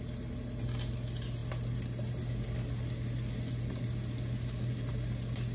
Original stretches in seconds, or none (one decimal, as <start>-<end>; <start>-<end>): 0.0-5.5